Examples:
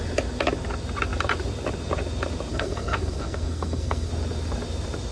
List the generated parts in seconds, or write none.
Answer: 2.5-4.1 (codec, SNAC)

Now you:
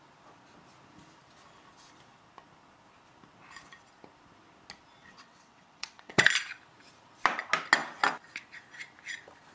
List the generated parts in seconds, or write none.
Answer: 5.0-6.3 (vocoder, WaveNeXt)

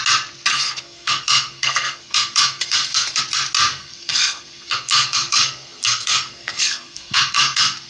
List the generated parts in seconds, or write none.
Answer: 0.5-3.2 (codec, SNAC); 3.7-7.9

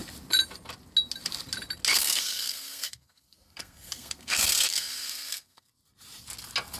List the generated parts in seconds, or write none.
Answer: 1.9-5.7 (codec, SNAC)

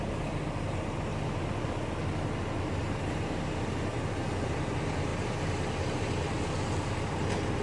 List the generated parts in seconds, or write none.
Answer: none

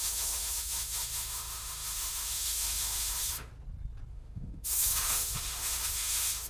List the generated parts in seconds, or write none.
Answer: 0.0-3.5 (autoencoder, DAC-VAE); 4.1-6.5

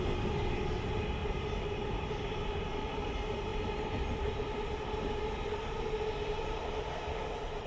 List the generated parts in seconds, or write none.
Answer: 1.2-3.1 (vocoder, BigVGAN v2); 3.5-4.3